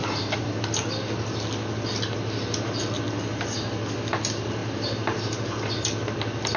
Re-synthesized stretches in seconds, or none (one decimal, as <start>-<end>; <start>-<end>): 0.0-0.6; 4.6-5.7